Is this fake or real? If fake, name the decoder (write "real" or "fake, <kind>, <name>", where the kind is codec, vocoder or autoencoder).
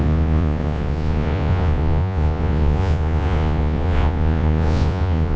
fake, vocoder, Vocos